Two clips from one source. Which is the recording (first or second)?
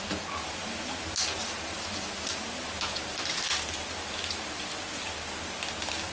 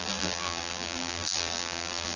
first